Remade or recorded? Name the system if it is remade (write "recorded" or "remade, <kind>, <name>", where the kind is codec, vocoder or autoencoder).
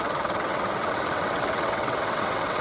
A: remade, vocoder, WaveNeXt